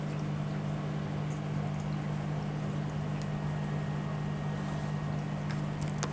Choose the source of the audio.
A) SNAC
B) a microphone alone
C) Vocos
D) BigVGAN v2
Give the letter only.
B